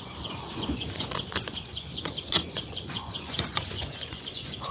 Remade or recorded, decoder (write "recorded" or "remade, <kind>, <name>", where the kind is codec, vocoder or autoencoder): remade, vocoder, Vocos